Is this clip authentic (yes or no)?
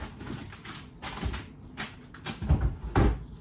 no